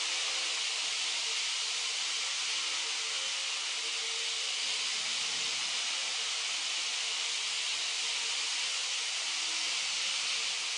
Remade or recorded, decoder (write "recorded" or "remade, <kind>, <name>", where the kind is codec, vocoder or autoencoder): recorded